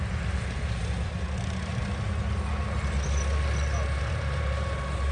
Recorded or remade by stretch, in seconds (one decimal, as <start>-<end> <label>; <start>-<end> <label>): 0.0-1.8 remade; 1.8-4.1 recorded; 4.1-5.1 remade